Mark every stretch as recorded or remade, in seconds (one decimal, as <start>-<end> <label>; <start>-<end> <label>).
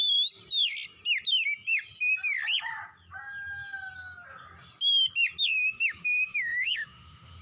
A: 0.0-5.5 recorded; 5.5-7.4 remade